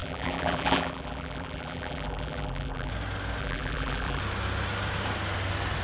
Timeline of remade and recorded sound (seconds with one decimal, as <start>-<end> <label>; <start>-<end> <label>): 0.0-2.9 remade; 2.9-3.4 recorded; 3.4-4.2 remade; 4.2-5.8 recorded